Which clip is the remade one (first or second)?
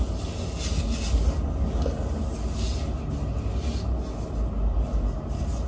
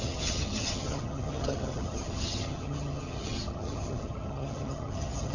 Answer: second